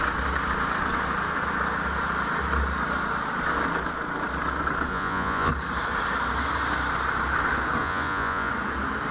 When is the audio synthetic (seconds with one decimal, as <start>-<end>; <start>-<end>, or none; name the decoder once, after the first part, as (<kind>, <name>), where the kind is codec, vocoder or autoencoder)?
4.9-5.5 (vocoder, Vocos); 7.8-8.5